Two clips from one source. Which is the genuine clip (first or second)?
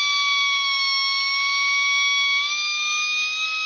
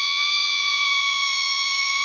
first